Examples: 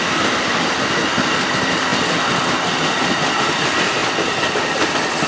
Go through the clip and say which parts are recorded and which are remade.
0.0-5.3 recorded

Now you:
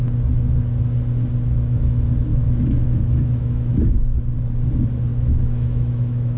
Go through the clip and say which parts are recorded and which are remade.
0.0-2.3 recorded; 2.3-3.9 remade; 3.9-5.1 recorded; 5.1-6.4 remade

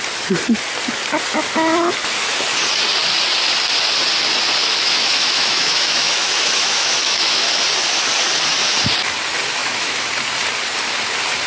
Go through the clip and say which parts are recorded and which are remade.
0.0-4.6 recorded; 4.6-7.6 remade; 7.6-9.6 recorded; 9.6-10.1 remade; 10.1-11.5 recorded

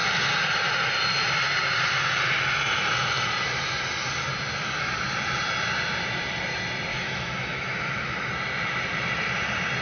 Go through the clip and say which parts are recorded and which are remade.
0.0-6.9 recorded; 6.9-8.3 remade; 8.3-9.8 recorded

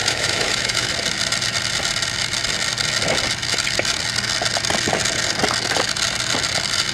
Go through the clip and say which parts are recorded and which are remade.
0.0-0.9 remade; 0.9-6.9 recorded